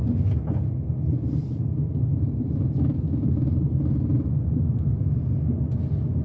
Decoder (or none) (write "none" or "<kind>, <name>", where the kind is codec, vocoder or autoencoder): none